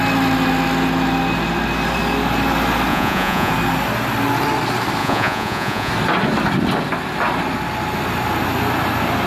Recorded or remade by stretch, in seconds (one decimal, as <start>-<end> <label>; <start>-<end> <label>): 0.0-2.9 recorded; 2.9-3.5 remade; 3.5-5.0 recorded; 5.0-5.9 remade; 5.9-9.3 recorded